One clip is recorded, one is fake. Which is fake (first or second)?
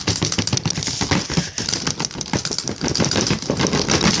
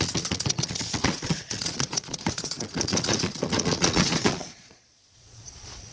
second